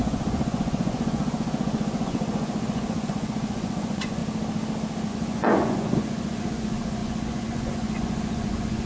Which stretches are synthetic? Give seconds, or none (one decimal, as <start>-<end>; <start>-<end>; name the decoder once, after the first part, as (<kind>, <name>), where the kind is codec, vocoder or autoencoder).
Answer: 0.0-4.2 (vocoder, Vocos); 5.1-8.9